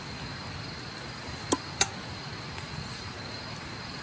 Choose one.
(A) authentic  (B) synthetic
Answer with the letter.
A